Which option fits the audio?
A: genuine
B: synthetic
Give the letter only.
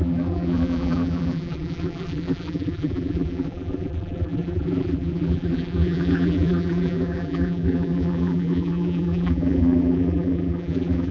B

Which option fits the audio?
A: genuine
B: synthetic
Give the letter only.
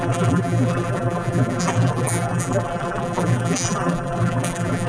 B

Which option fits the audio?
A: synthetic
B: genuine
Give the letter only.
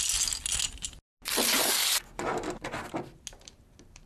B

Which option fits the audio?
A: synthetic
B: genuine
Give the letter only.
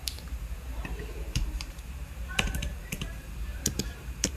A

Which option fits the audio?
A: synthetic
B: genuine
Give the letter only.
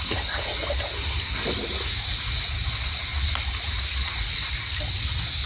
B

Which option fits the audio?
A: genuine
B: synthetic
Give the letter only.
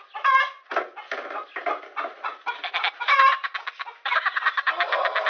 A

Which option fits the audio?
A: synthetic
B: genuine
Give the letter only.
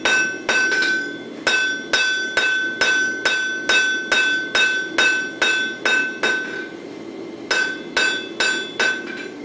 B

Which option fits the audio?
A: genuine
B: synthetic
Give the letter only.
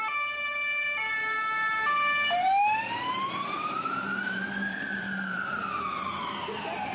B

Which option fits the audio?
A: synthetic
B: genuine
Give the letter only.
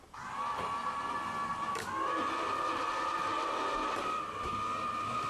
B